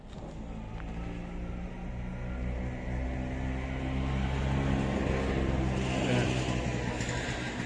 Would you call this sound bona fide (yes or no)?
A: yes